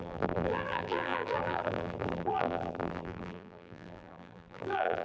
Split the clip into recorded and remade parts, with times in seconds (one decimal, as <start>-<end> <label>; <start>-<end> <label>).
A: 0.0-5.0 remade